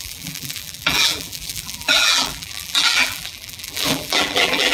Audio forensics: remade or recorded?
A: remade